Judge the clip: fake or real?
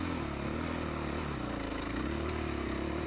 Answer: real